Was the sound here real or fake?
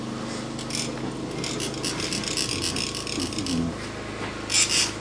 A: real